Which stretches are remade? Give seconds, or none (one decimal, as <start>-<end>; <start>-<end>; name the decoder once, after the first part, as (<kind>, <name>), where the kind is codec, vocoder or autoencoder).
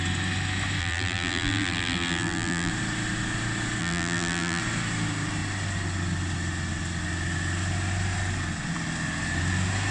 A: 0.8-2.7 (vocoder, BigVGAN v2); 3.8-4.6